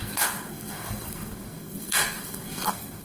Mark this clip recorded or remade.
remade